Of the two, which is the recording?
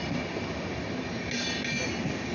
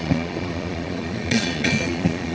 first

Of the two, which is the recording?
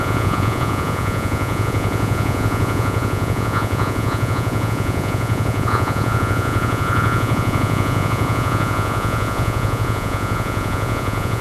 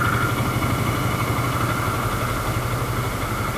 second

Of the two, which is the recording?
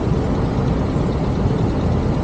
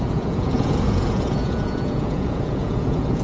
first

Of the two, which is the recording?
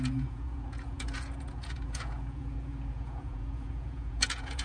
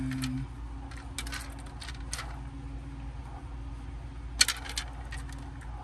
second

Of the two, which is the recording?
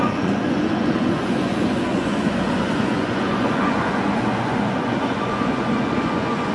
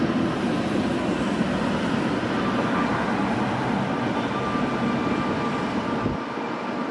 second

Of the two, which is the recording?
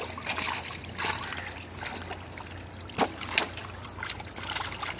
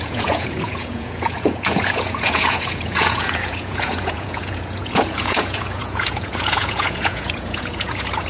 first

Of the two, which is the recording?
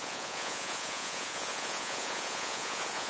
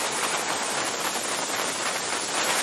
second